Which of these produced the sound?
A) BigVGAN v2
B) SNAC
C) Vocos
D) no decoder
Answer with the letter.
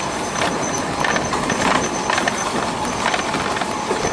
D